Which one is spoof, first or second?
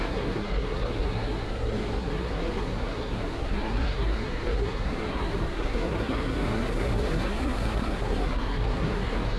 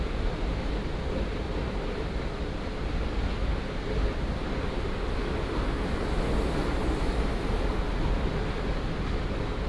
first